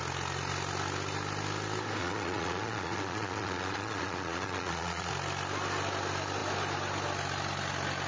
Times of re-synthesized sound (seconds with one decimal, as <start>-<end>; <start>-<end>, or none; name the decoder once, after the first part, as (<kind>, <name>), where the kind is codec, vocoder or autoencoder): 2.0-5.1 (vocoder, Vocos)